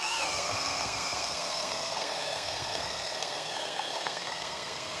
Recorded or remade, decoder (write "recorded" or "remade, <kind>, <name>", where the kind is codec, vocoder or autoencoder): remade, codec, SNAC